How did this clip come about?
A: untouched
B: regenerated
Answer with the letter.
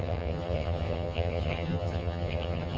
B